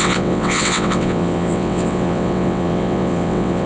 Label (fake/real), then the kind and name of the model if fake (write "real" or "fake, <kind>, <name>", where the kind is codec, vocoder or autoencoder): fake, vocoder, WaveNeXt